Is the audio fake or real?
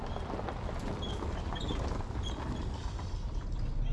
real